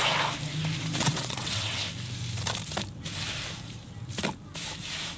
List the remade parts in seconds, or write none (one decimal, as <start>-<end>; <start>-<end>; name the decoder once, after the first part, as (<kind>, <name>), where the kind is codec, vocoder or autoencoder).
1.0-1.8 (vocoder, WaveNeXt)